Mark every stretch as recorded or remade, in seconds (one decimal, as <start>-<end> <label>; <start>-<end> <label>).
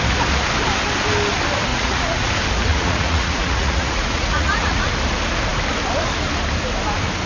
0.0-1.7 recorded; 1.7-2.3 remade; 2.3-2.7 recorded; 2.7-4.9 remade; 4.9-7.3 recorded